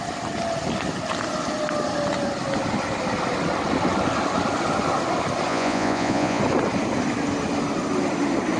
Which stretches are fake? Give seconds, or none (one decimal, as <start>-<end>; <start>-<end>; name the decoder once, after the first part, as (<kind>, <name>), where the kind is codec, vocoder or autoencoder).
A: 5.5-6.4 (vocoder, Vocos)